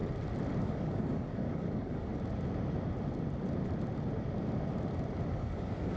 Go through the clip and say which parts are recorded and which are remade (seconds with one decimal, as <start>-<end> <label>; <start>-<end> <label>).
0.0-0.6 recorded; 0.6-2.1 remade; 2.1-5.3 recorded; 5.3-6.0 remade